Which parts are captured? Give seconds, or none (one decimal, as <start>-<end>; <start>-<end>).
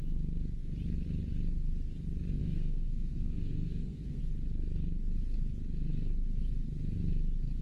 0.0-2.4; 4.2-7.6